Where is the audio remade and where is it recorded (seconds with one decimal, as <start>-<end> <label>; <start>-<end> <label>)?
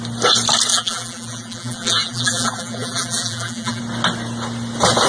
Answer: 0.0-0.7 recorded; 0.7-3.8 remade; 3.8-5.1 recorded